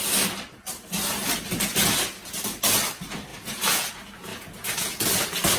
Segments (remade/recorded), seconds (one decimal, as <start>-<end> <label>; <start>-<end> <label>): 0.0-3.3 recorded; 3.3-3.9 remade; 3.9-4.3 recorded; 4.3-5.0 remade; 5.0-5.6 recorded